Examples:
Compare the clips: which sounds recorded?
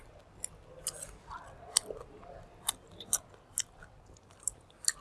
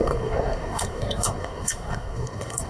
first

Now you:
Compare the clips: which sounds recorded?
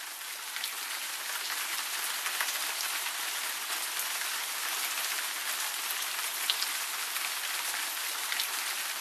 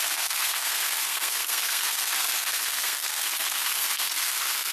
first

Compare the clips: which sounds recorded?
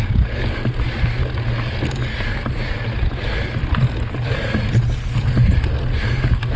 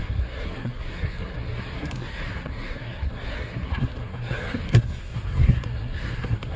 first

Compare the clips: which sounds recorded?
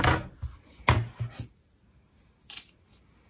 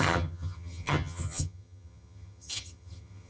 first